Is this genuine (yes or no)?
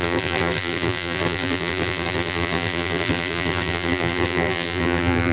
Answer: no